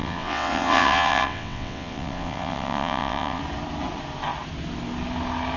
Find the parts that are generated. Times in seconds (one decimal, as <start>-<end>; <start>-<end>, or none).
0.0-3.4